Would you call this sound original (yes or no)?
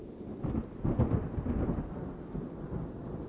yes